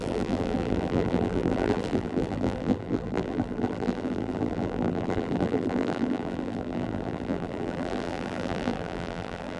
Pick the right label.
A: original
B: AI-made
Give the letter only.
B